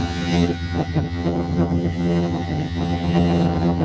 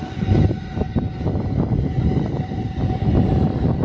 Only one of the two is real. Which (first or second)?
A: second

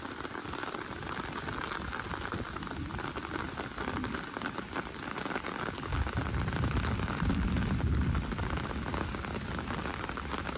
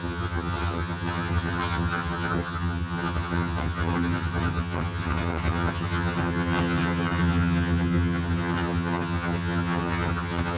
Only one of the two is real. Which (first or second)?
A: first